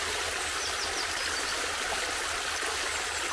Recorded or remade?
recorded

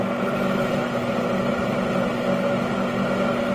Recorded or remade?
recorded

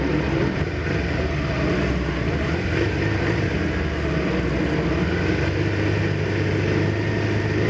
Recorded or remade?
recorded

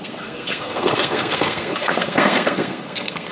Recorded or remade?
remade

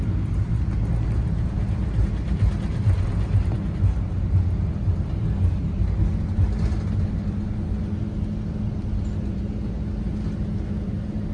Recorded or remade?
recorded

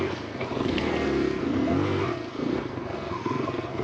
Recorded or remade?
remade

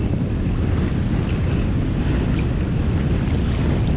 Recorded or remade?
recorded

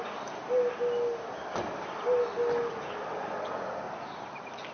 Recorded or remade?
recorded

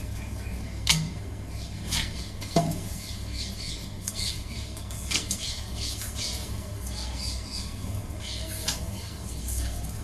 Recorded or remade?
remade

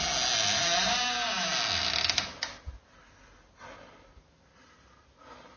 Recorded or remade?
recorded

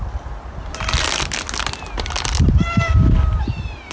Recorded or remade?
recorded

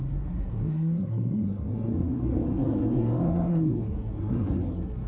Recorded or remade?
remade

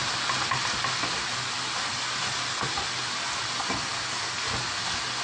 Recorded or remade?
recorded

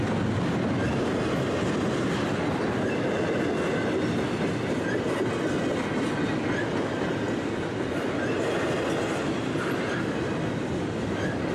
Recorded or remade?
recorded